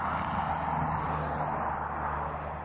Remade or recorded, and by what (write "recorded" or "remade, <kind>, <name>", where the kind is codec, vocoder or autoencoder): recorded